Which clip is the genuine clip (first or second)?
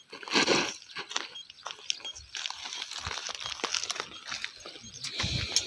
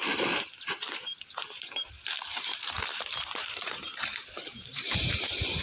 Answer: first